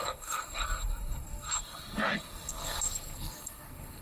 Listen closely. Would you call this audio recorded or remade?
remade